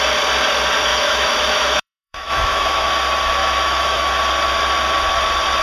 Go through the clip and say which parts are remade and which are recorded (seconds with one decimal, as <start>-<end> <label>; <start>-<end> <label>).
0.0-0.9 recorded; 0.9-2.9 remade; 2.9-3.4 recorded; 3.4-4.1 remade; 4.1-5.6 recorded